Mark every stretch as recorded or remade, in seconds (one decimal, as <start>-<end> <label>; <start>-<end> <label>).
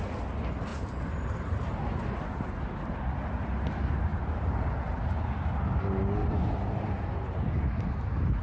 0.0-0.7 recorded; 0.7-2.5 remade; 2.5-4.1 recorded; 4.1-4.7 remade; 4.7-6.2 recorded; 6.2-7.4 remade; 7.4-8.4 recorded